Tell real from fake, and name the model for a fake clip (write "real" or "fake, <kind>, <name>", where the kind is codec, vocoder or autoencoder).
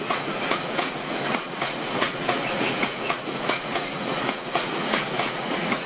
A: fake, vocoder, Vocos